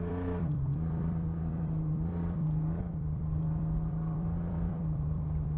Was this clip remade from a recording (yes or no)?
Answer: yes